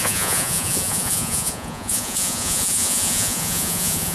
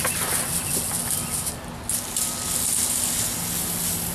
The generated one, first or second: first